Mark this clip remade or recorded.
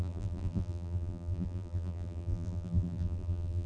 remade